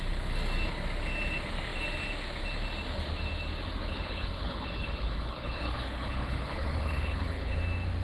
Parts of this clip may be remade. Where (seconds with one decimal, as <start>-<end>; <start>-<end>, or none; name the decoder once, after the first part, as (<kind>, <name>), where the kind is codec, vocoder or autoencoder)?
3.9-7.6 (codec, HILCodec)